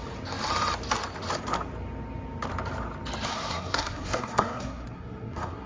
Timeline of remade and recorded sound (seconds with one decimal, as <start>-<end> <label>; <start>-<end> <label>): 0.0-3.3 recorded; 3.3-5.7 remade